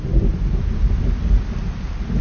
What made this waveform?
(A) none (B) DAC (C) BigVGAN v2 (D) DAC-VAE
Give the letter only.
A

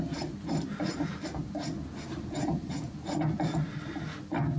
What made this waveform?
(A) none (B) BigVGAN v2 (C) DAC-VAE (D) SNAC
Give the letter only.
A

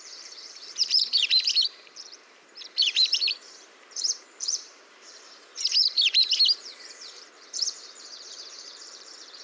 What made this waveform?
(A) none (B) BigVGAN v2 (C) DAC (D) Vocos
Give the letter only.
B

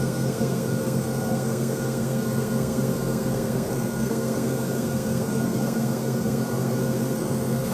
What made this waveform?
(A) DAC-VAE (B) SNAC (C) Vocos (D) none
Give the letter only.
B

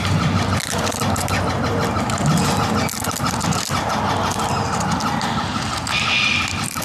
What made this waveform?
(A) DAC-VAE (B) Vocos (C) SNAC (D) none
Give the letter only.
D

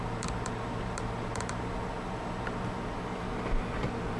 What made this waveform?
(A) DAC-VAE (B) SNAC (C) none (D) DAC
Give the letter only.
C